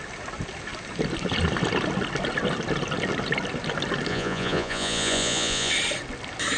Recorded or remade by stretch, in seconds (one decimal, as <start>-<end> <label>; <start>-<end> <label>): 0.0-4.1 recorded; 4.1-5.7 remade; 5.7-6.6 recorded